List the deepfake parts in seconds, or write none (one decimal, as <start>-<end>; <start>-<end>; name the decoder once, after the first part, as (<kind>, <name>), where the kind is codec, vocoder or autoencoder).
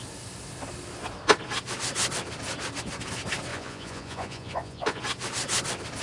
3.5-5.0 (vocoder, Vocos)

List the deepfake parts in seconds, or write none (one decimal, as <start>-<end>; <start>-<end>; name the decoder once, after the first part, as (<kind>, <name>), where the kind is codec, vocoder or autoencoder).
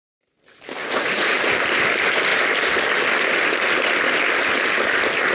0.8-1.5 (vocoder, Vocos)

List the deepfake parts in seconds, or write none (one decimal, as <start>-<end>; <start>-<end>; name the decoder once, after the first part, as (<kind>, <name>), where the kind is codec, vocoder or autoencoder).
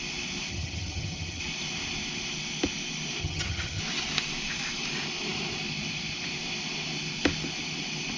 0.5-1.4 (vocoder, HiFi-GAN); 3.2-3.8